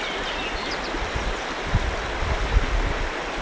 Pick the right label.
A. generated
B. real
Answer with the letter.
B